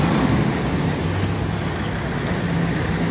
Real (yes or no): yes